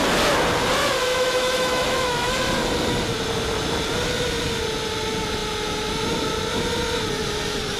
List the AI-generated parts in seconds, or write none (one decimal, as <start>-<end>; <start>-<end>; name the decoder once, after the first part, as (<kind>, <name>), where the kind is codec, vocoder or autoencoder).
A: 1.1-2.3 (autoencoder, DAC-VAE)